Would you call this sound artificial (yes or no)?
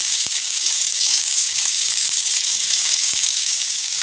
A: yes